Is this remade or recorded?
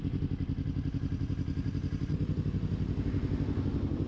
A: recorded